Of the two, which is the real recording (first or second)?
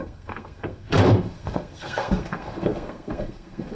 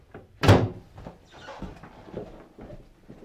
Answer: second